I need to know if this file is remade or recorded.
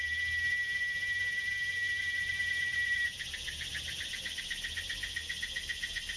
recorded